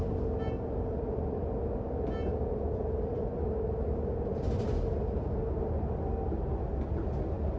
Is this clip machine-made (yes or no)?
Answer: no